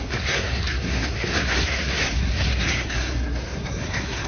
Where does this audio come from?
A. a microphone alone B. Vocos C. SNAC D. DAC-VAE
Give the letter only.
C